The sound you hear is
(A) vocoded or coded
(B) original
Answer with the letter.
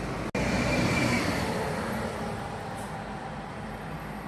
B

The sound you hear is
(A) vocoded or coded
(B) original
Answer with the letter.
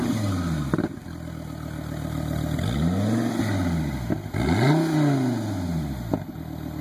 B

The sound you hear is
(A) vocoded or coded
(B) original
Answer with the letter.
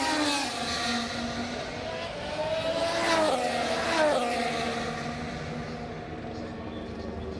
B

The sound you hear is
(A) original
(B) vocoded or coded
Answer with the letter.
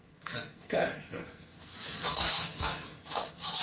B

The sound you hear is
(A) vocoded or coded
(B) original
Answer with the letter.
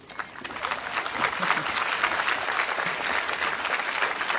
B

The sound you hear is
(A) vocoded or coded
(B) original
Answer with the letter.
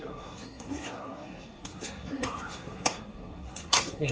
A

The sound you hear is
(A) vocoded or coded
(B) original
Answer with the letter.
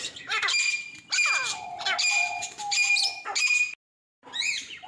B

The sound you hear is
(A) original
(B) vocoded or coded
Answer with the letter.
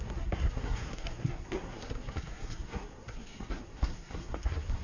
B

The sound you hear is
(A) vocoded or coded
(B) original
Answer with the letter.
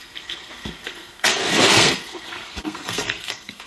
A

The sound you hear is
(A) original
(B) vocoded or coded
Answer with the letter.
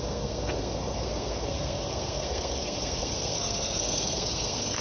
B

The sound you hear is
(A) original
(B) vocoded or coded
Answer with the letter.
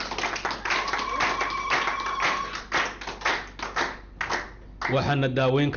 A